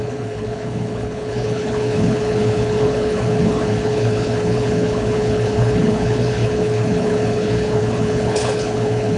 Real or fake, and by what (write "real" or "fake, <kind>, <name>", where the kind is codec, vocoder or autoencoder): fake, codec, HILCodec